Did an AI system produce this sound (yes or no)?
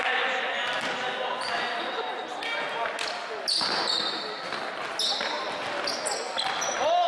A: no